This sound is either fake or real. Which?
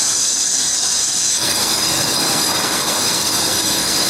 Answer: fake